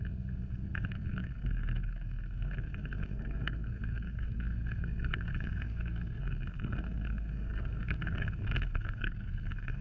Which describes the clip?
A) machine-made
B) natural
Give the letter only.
A